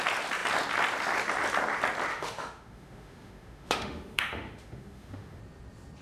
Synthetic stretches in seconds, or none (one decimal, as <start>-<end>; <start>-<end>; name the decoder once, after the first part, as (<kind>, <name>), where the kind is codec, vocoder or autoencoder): 2.1-5.4 (autoencoder, DAC-VAE)